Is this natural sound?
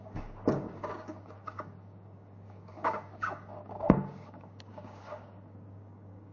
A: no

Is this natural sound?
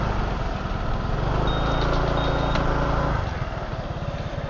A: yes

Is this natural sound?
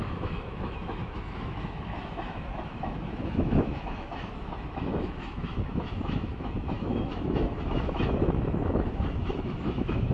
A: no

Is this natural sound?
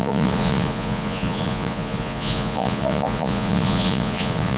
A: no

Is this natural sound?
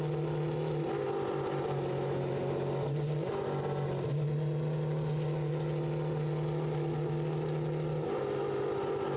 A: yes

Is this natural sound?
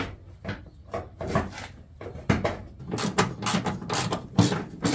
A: yes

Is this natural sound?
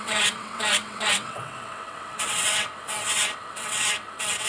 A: no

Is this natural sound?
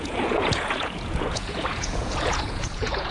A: no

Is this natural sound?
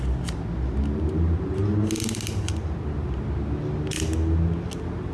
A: yes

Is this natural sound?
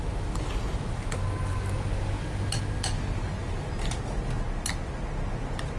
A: yes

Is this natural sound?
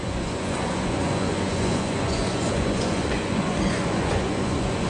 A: no